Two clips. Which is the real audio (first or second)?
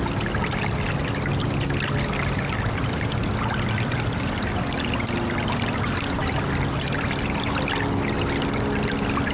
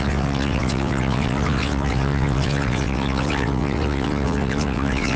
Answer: first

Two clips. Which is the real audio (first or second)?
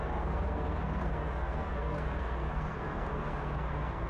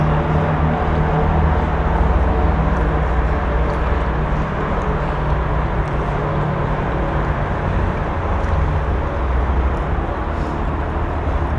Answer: second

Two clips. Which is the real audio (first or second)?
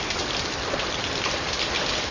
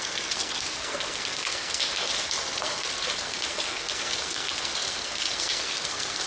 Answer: first